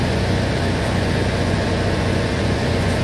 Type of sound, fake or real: fake